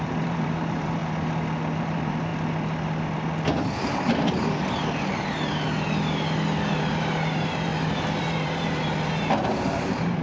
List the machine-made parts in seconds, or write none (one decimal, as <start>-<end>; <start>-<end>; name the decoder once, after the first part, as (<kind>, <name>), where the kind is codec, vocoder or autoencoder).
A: 0.0-1.0 (vocoder, BigVGAN v2); 1.8-2.3; 6.7-7.7; 8.2-10.2